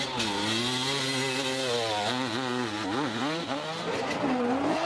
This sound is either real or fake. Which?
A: real